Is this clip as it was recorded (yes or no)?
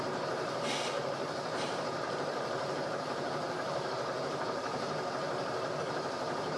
no